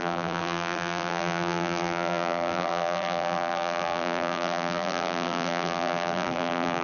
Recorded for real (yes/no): no